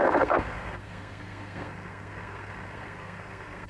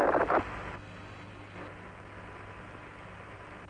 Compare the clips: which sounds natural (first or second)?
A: second